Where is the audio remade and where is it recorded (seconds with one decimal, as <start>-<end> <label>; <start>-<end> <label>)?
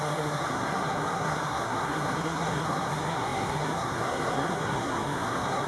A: 0.0-5.7 remade